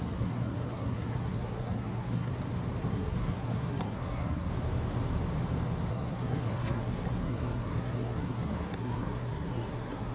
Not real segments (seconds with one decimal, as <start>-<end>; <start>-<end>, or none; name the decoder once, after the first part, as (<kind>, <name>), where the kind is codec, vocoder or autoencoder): 0.0-2.3 (codec, SNAC); 2.8-4.5; 5.9-10.1